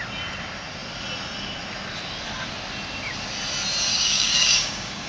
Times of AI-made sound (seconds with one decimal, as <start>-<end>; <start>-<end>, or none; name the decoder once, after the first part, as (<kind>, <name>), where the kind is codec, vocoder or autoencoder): 3.9-5.1 (codec, DAC)